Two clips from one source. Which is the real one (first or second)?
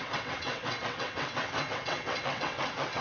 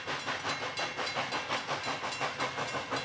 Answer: second